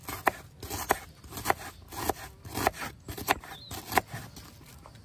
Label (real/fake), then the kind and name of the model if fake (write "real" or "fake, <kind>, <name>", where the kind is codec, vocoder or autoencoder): real